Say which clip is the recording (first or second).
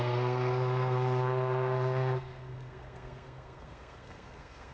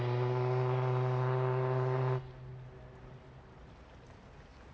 second